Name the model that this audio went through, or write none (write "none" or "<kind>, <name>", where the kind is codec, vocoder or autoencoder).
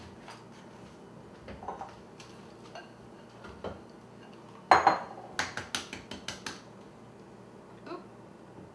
none